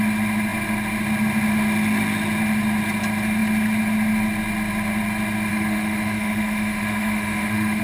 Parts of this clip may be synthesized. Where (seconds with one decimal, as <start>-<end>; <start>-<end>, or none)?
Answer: 5.5-7.8